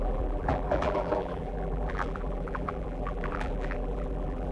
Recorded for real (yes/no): no